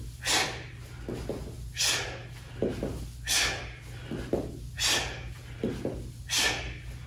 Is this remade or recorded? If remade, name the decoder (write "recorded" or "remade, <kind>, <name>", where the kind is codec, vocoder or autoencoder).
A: recorded